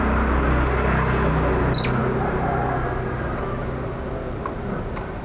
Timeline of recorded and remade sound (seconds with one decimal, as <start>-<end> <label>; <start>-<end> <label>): 0.0-5.2 recorded